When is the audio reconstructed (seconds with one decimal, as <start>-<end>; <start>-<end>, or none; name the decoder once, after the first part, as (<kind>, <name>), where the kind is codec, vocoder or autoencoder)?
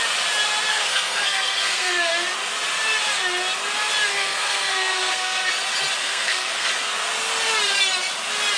0.7-2.1 (codec, SNAC); 4.1-5.5; 6.0-6.7